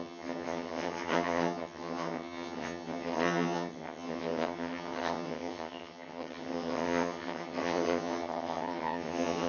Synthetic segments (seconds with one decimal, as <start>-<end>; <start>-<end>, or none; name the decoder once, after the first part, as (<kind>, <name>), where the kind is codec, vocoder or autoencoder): 0.0-9.5 (vocoder, HiFi-GAN)